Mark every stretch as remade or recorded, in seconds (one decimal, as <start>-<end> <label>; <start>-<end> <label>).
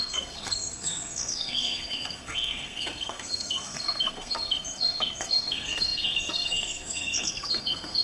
0.0-8.0 remade